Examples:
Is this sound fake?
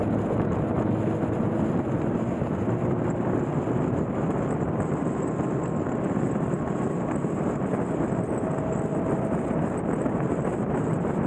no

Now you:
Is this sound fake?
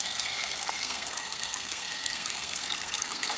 yes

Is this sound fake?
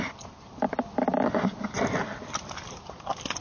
no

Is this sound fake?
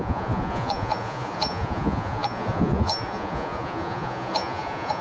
yes